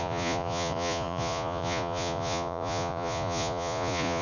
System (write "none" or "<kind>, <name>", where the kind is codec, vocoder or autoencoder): vocoder, Vocos